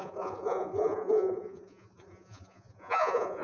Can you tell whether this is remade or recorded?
remade